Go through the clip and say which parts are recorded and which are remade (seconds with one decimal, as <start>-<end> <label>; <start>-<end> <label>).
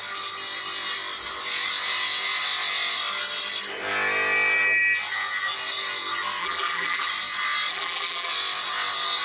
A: 0.0-6.4 recorded; 6.4-7.1 remade; 7.1-7.7 recorded; 7.7-8.3 remade; 8.3-9.2 recorded